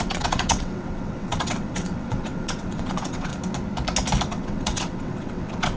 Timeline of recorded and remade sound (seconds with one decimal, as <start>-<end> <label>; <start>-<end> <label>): 0.0-3.3 remade; 3.3-4.3 recorded; 4.3-5.8 remade